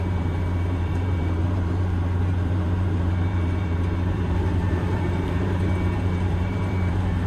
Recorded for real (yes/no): no